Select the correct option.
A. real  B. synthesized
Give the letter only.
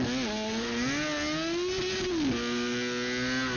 A